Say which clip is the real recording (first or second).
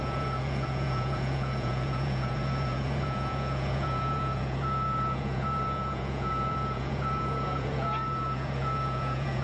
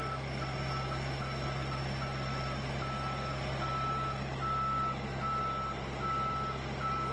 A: second